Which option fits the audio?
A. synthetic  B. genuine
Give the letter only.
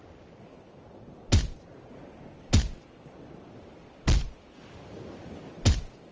B